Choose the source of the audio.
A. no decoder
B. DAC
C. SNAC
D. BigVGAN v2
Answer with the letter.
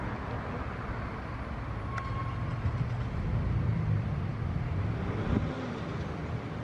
A